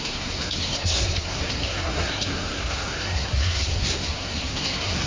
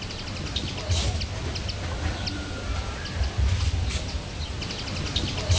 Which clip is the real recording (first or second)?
second